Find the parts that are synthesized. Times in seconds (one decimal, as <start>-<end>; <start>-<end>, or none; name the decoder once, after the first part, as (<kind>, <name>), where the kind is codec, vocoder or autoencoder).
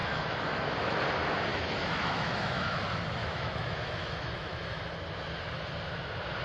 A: 0.0-1.0 (autoencoder, DAC-VAE); 1.5-2.8; 3.2-4.9